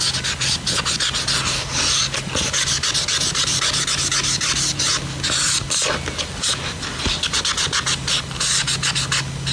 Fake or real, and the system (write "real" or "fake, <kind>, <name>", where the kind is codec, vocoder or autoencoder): real